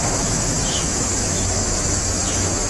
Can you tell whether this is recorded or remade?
remade